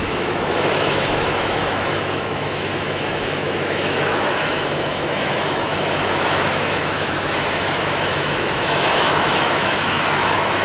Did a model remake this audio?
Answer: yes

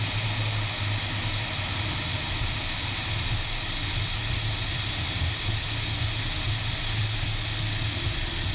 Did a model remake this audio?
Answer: no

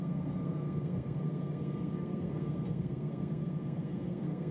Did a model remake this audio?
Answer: yes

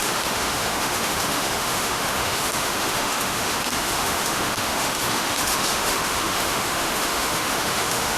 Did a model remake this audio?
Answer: yes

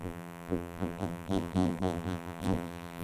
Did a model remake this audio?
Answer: yes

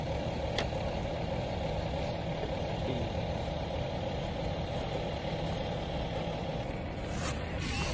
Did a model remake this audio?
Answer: yes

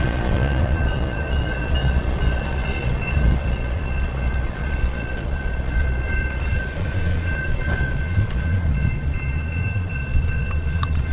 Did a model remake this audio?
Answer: yes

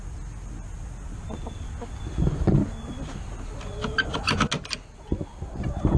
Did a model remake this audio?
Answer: no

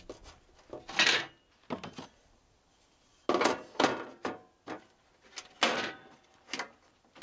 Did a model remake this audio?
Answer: no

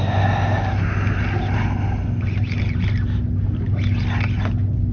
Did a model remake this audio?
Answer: no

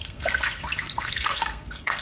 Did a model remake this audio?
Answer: yes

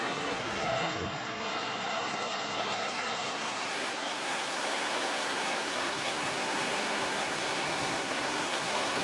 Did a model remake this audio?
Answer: yes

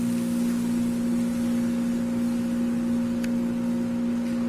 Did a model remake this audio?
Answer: no